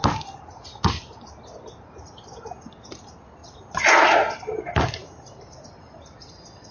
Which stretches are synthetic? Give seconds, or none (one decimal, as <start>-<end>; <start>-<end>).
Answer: none